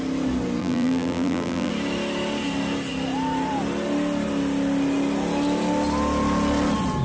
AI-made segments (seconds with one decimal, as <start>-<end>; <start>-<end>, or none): 0.6-1.7